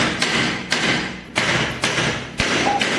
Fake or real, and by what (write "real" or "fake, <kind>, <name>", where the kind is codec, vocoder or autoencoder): real